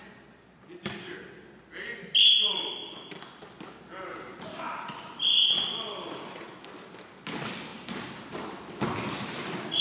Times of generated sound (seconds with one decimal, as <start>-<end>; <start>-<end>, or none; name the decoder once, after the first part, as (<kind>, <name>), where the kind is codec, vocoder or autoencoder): 7.7-8.6 (vocoder, BigVGAN v2)

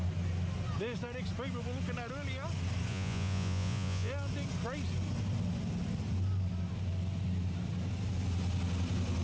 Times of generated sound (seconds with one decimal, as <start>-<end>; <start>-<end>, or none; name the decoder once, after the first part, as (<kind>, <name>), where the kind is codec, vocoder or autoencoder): 2.9-4.1 (vocoder, Vocos)

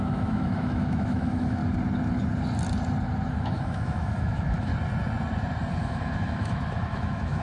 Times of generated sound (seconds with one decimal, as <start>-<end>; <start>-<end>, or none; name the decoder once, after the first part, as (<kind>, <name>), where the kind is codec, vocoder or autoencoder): 0.0-1.6 (autoencoder, DAC-VAE); 3.3-4.7; 5.8-7.4

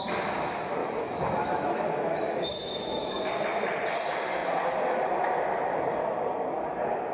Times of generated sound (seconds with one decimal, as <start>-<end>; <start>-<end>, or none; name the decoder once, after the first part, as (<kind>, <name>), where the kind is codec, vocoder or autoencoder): 0.8-3.3 (autoencoder, DAC-VAE)

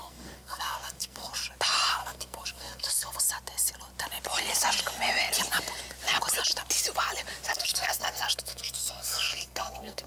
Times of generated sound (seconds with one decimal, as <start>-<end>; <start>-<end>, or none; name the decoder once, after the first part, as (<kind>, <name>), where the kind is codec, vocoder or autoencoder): 0.0-1.3 (codec, SNAC); 2.0-3.2; 7.5-10.1

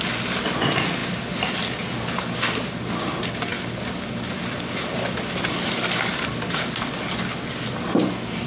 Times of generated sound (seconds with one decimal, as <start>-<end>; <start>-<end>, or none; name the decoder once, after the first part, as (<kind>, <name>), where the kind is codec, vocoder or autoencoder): none

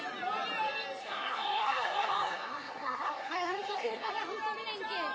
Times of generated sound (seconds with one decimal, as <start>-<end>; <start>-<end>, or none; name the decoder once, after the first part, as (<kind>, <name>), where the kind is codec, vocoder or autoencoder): 1.0-4.1 (codec, SNAC)